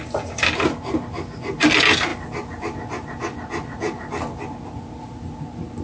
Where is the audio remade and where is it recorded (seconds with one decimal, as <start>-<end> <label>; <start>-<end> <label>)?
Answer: 0.0-5.8 recorded